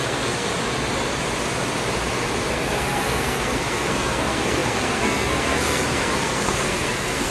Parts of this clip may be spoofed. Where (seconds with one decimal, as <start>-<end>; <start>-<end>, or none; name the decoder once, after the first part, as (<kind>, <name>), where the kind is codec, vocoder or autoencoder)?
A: 0.0-0.5 (codec, SNAC); 2.5-7.3